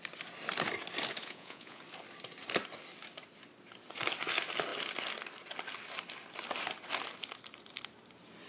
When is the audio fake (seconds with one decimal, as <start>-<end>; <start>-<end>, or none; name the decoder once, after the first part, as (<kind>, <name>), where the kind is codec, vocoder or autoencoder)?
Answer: 1.2-1.8 (vocoder, Vocos)